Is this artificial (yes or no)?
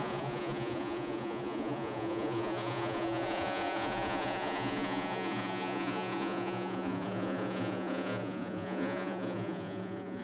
yes